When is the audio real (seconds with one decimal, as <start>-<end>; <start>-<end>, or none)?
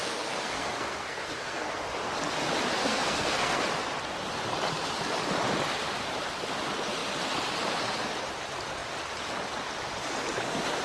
1.8-2.8; 3.6-10.8